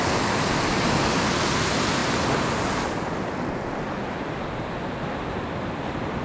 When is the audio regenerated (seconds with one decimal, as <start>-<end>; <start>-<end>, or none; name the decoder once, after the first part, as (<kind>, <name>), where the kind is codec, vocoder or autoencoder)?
none